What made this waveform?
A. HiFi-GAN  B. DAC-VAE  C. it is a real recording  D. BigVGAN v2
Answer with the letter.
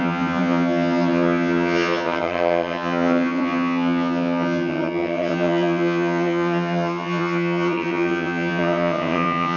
A